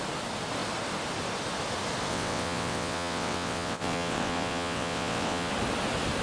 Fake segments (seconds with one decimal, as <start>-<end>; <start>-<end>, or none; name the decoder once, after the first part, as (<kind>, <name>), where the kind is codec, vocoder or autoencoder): 2.1-5.5 (vocoder, WaveNeXt)